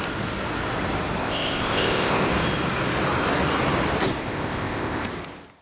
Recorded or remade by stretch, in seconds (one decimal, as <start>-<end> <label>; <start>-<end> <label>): 0.0-1.2 recorded; 1.2-2.3 remade; 2.3-4.2 recorded; 4.2-5.1 remade; 5.1-5.6 recorded